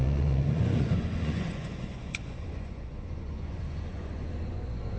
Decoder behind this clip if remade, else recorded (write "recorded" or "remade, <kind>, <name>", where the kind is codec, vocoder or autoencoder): remade, vocoder, Vocos